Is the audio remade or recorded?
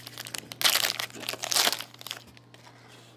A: recorded